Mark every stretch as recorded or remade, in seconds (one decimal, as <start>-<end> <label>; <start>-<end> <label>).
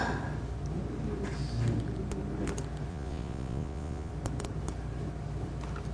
0.0-2.9 recorded; 2.9-4.1 remade; 4.1-5.9 recorded